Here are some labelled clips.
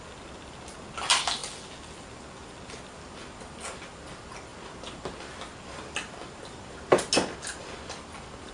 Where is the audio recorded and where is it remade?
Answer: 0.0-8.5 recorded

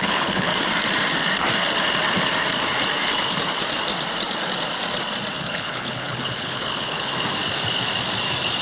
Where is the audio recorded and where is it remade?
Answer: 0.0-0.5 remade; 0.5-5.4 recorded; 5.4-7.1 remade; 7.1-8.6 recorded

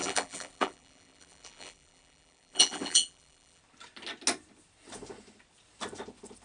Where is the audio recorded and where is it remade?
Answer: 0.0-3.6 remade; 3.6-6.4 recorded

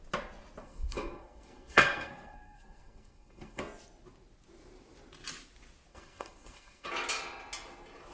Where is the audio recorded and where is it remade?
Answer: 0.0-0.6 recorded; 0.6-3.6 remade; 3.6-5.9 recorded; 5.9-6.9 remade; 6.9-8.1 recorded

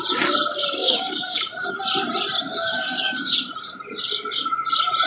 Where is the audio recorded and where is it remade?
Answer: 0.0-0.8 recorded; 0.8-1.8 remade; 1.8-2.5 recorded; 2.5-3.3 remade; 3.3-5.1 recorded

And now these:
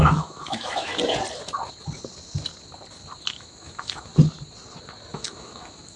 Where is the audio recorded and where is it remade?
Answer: 0.0-0.9 remade; 0.9-3.3 recorded; 3.3-4.1 remade; 4.1-5.1 recorded; 5.1-6.0 remade